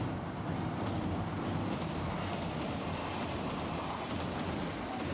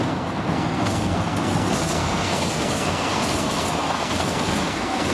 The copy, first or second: second